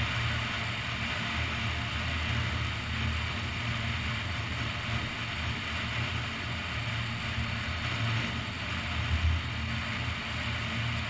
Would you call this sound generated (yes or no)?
no